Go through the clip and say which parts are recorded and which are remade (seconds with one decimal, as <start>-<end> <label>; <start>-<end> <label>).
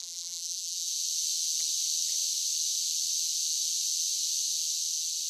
0.0-0.9 remade; 0.9-5.3 recorded